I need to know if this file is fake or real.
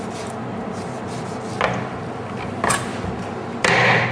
real